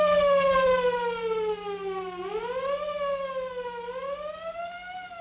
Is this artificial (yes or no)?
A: no